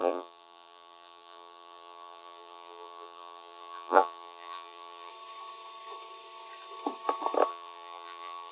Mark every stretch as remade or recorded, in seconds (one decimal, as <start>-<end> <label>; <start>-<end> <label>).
0.0-5.1 remade; 5.1-7.5 recorded; 7.5-8.5 remade